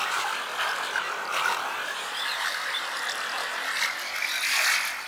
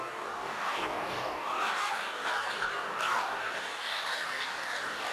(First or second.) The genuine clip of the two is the first